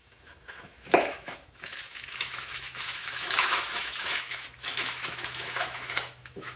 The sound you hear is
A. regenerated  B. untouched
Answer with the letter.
A